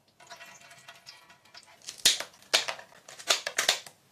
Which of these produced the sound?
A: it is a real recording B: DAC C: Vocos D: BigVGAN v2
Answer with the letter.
A